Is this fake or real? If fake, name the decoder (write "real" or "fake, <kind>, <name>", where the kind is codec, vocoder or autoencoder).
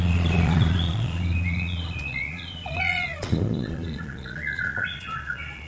fake, vocoder, Vocos